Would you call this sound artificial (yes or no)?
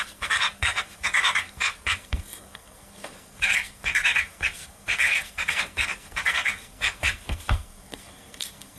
yes